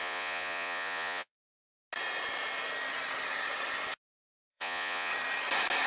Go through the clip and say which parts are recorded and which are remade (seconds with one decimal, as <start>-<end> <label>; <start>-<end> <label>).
0.0-1.4 remade; 1.4-4.5 recorded; 4.5-5.1 remade; 5.1-5.9 recorded